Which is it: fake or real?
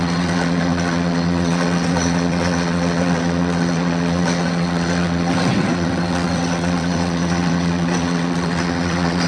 fake